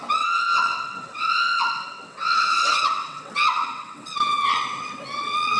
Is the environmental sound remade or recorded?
remade